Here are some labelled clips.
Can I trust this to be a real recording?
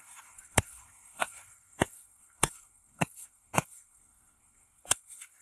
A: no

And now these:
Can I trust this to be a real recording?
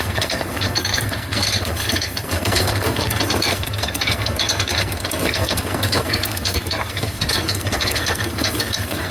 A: no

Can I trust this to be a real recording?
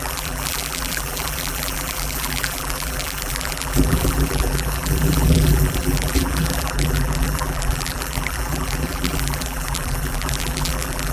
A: no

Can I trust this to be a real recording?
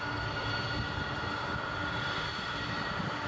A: yes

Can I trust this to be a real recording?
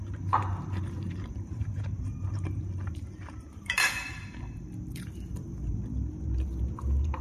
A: no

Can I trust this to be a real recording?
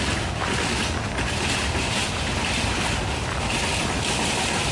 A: yes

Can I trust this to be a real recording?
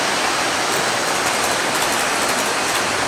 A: yes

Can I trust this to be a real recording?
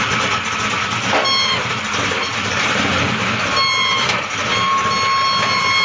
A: yes